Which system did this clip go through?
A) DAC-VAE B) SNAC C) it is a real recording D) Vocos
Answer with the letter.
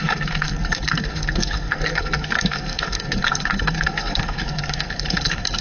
B